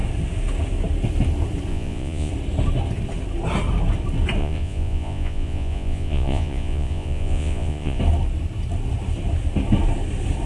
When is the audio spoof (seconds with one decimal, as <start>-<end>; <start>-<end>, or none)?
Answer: 1.7-2.3; 4.4-8.0